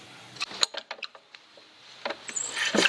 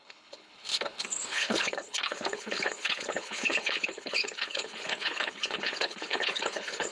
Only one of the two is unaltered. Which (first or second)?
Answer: first